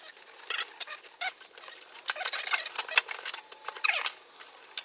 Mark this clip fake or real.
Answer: real